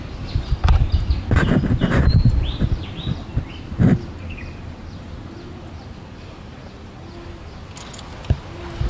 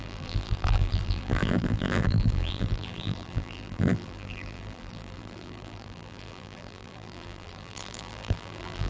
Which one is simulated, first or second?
second